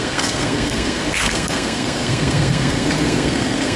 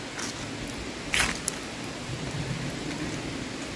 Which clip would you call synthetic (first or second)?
first